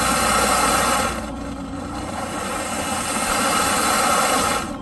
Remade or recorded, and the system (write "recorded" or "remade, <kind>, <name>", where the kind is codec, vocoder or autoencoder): recorded